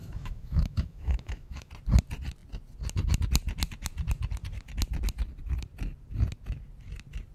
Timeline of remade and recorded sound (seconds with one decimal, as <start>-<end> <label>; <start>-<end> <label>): 0.0-1.7 remade; 1.7-7.3 recorded